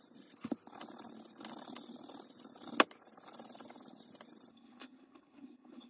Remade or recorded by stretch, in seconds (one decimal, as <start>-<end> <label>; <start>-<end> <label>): 0.0-4.5 recorded; 4.5-5.9 remade